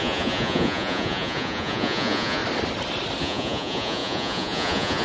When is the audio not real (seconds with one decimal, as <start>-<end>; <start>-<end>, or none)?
0.0-2.4; 3.2-5.0